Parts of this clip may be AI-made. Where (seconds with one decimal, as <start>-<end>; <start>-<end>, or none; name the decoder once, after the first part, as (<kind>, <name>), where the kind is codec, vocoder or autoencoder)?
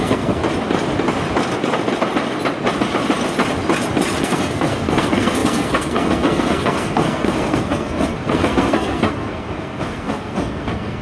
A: 0.0-0.4 (codec, SNAC); 4.2-11.0